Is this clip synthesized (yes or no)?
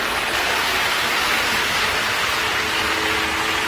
no